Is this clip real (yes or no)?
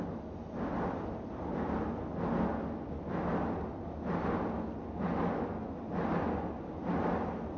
yes